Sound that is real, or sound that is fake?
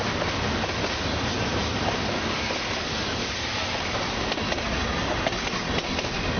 real